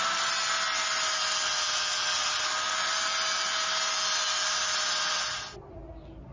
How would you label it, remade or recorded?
recorded